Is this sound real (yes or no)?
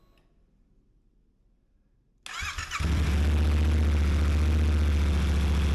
yes